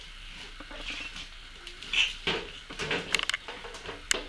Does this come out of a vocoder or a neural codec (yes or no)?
no